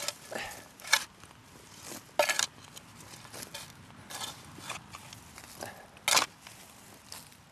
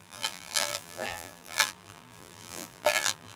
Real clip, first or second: first